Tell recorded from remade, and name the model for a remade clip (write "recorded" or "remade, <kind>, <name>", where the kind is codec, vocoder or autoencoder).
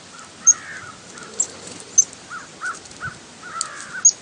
recorded